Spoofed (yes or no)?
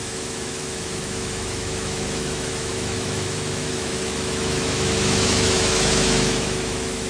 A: yes